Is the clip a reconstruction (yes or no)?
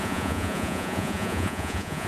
yes